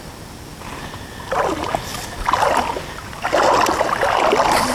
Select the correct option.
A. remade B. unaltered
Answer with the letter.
B